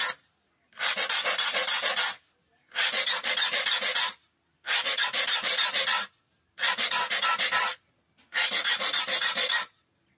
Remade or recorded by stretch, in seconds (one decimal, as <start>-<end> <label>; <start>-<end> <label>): 0.0-10.2 recorded